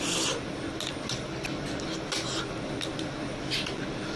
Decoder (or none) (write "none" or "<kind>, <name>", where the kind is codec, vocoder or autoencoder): none